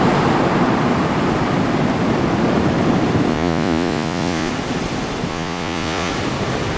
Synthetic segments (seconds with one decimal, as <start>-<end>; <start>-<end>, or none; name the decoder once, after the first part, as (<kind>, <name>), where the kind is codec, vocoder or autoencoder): 3.3-4.5 (vocoder, Vocos); 5.3-6.1

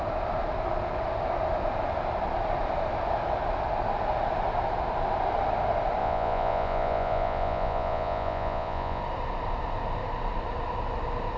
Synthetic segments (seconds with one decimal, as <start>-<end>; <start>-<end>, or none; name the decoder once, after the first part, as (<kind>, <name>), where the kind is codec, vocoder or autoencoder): 6.0-9.0 (vocoder, Vocos)

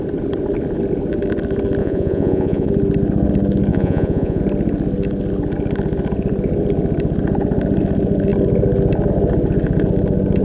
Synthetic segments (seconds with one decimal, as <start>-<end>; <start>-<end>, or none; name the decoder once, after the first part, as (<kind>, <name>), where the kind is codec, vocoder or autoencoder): 1.8-2.7 (vocoder, Vocos); 3.7-4.4

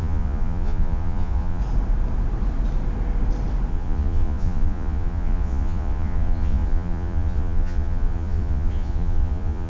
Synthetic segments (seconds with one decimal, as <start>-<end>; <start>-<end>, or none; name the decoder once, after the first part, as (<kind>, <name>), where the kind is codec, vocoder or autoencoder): 0.0-1.6 (vocoder, Vocos); 3.7-9.7

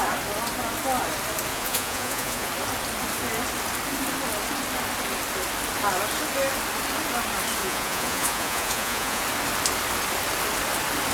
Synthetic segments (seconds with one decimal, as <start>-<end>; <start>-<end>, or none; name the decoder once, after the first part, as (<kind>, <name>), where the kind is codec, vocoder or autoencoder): 1.5-2.5 (vocoder, Vocos); 7.6-9.2

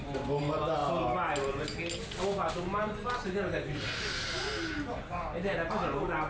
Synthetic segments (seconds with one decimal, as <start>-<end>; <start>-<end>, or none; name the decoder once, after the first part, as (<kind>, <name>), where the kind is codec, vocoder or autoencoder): none